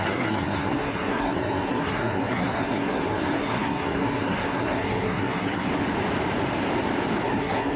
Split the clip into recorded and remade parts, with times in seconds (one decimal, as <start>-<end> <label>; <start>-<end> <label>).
0.0-5.7 remade; 5.7-7.2 recorded; 7.2-7.8 remade